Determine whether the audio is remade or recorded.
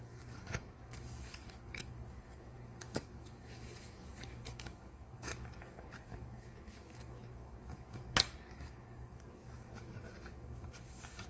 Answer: remade